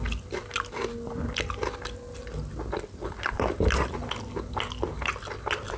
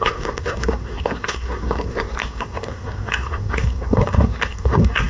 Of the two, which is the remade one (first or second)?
second